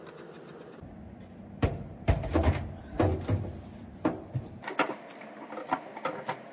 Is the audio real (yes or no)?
yes